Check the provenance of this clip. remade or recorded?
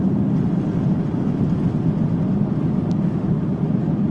recorded